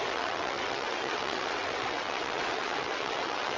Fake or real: fake